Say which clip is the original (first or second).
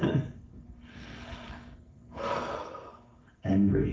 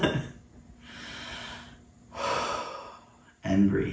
second